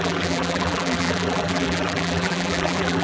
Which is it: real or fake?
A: fake